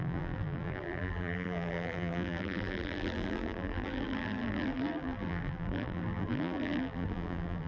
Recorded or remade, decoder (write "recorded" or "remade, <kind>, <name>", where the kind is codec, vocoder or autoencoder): remade, vocoder, BigVGAN v2